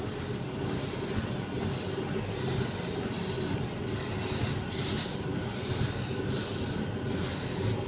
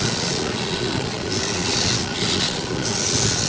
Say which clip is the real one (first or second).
first